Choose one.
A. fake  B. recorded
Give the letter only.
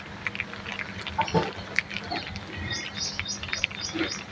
B